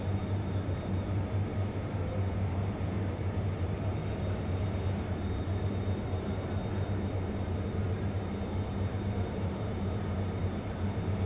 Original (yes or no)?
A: no